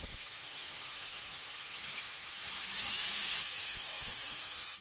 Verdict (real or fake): fake